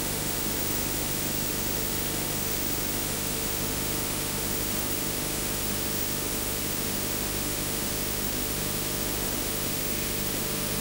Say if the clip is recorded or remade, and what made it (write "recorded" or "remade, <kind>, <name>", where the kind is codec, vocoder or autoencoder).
remade, autoencoder, DAC-VAE